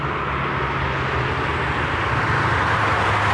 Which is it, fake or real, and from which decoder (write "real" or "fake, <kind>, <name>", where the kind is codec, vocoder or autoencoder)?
real